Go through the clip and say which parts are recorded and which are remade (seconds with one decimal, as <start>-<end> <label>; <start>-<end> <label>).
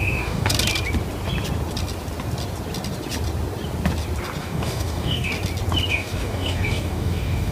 0.0-0.5 remade; 0.5-4.4 recorded; 4.4-5.3 remade; 5.3-5.9 recorded; 5.9-7.5 remade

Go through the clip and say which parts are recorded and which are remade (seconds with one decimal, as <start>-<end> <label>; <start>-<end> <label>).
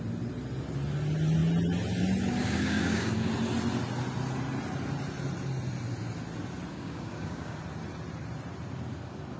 0.0-2.4 recorded; 2.4-3.3 remade; 3.3-6.7 recorded; 6.7-7.6 remade; 7.6-9.4 recorded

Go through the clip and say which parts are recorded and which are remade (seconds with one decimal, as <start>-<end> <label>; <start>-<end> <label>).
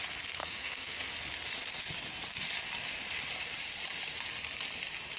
0.0-0.4 recorded; 0.4-1.1 remade; 1.1-5.2 recorded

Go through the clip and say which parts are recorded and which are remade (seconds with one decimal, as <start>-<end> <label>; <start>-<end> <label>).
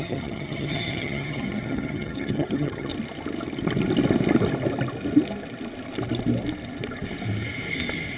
0.0-2.9 remade; 2.9-8.2 recorded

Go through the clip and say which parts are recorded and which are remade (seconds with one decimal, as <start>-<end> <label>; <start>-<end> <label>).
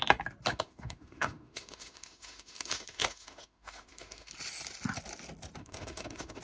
0.0-0.5 recorded; 0.5-4.3 remade; 4.3-5.6 recorded; 5.6-6.4 remade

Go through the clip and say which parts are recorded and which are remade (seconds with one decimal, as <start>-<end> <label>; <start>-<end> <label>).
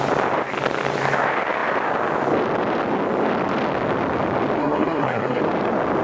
0.0-4.6 recorded; 4.6-5.4 remade; 5.4-6.0 recorded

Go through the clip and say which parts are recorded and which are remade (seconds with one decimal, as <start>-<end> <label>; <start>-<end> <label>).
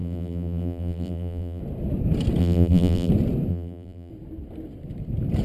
0.0-1.6 remade; 1.6-2.4 recorded; 2.4-3.1 remade; 3.1-3.5 recorded; 3.5-4.1 remade; 4.1-5.4 recorded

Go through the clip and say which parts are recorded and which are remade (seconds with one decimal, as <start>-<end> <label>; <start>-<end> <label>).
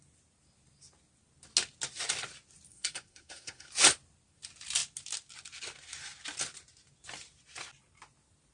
0.0-2.7 recorded; 2.7-3.7 remade; 3.7-8.5 recorded